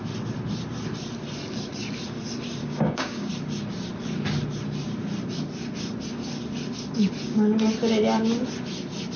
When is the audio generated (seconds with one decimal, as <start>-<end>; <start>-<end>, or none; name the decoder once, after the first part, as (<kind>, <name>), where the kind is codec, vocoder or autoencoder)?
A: 2.6-3.3 (codec, DAC)